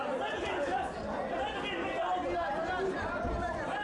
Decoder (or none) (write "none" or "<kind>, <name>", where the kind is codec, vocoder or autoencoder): none